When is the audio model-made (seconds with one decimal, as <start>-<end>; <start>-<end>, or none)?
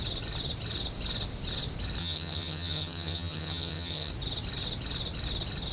2.0-4.1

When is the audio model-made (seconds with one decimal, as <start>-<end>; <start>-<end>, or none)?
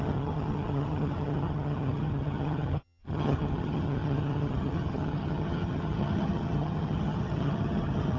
0.0-8.2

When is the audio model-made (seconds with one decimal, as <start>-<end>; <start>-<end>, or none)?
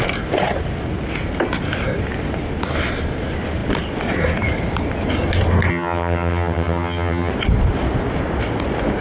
5.7-7.3